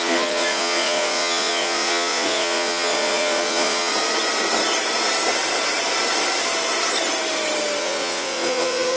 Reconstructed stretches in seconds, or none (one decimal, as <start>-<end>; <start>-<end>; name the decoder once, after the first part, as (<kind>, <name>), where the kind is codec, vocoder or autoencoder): 0.0-3.9 (vocoder, Vocos); 7.8-9.0